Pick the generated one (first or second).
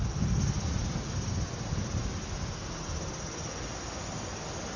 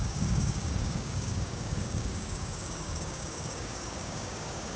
second